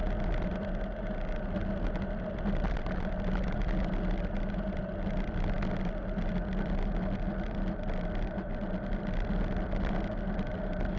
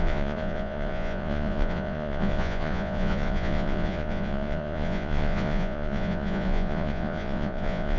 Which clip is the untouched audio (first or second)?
first